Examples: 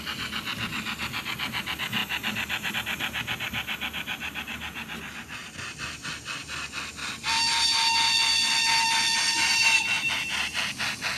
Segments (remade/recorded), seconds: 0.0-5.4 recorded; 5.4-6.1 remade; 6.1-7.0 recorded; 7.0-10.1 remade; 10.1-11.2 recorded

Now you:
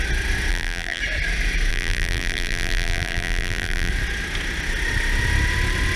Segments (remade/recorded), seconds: 0.0-0.5 recorded; 0.5-1.0 remade; 1.0-1.7 recorded; 1.7-3.9 remade; 3.9-6.0 recorded